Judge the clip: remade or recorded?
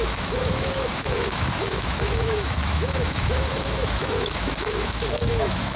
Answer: remade